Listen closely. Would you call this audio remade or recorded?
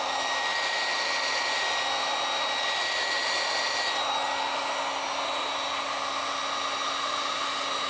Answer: recorded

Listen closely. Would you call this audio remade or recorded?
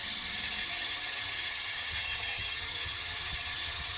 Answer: remade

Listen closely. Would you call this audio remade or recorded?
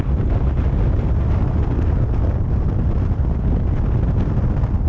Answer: recorded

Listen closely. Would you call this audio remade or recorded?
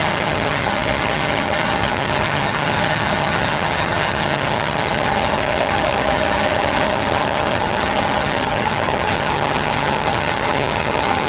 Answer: remade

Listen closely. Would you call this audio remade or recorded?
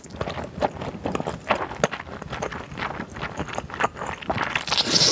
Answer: recorded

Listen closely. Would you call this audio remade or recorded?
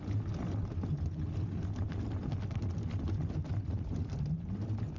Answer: recorded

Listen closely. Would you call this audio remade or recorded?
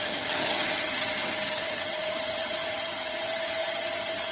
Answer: remade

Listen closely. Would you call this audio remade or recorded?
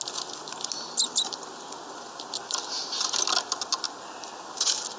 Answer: recorded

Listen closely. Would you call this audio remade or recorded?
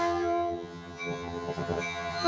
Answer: remade